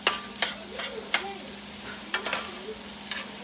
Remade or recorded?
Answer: recorded